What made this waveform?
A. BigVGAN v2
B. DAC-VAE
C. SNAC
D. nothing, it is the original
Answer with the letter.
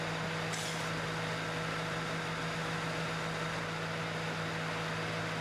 D